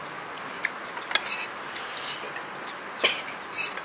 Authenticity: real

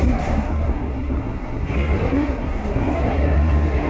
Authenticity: fake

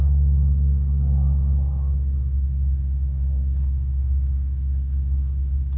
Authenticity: fake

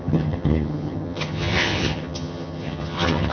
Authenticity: fake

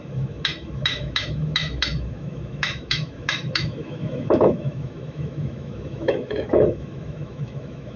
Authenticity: fake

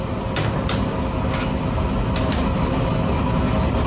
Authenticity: real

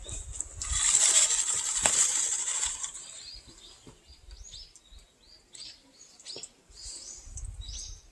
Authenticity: real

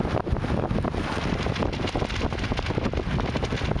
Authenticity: real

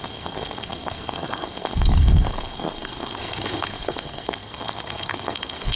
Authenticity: fake